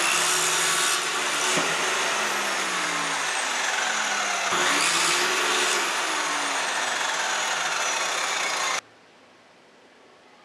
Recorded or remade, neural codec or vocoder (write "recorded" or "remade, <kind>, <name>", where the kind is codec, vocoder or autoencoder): recorded